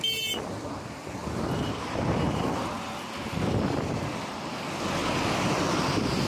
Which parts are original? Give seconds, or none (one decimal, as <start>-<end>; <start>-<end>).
0.0-6.3

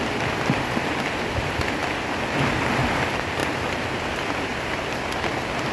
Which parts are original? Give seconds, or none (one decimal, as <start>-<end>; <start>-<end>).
0.0-5.7